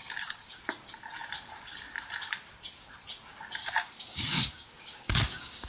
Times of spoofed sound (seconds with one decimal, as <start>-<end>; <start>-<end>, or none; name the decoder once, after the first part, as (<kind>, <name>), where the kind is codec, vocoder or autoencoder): 0.0-0.6 (codec, DAC); 3.6-5.7